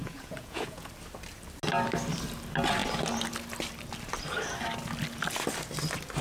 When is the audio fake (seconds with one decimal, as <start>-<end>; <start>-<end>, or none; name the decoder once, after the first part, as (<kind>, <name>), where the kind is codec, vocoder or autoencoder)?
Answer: 0.0-0.9 (vocoder, Vocos)